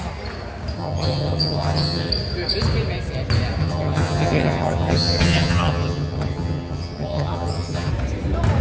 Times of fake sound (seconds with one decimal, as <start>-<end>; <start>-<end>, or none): 0.8-2.1; 3.6-7.9